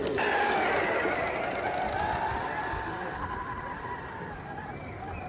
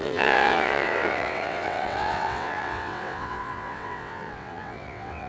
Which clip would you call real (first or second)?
first